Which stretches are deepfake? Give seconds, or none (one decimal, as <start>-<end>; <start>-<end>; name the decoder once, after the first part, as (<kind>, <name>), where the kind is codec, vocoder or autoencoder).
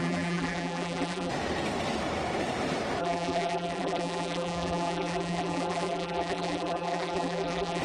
0.0-1.3 (vocoder, BigVGAN v2); 3.0-7.8